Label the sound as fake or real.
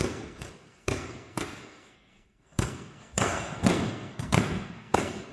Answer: fake